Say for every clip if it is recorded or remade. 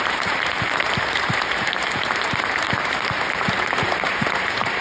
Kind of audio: remade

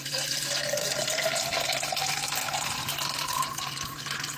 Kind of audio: recorded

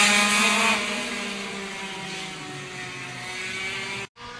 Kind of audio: recorded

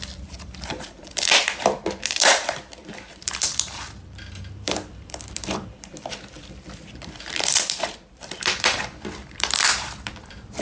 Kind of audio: remade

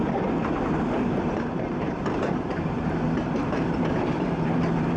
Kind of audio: remade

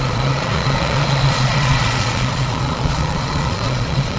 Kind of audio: remade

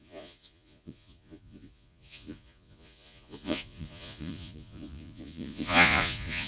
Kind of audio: remade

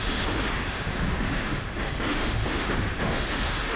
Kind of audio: remade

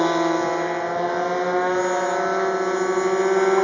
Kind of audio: recorded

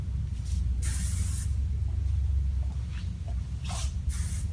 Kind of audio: recorded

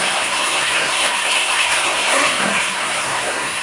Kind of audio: remade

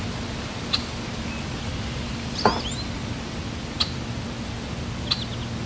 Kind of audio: recorded